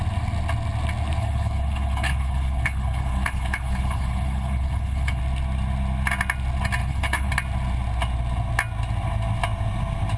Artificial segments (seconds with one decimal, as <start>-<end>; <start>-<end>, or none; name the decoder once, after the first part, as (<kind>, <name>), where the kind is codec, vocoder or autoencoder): 1.2-5.2 (codec, HILCodec); 6.8-7.3